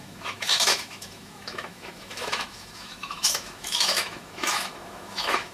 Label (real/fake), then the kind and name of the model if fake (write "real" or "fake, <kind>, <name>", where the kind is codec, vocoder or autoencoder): fake, autoencoder, DAC-VAE